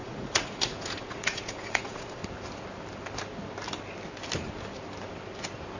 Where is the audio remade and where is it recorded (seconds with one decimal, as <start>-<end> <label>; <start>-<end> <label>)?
0.0-2.2 remade; 2.2-5.8 recorded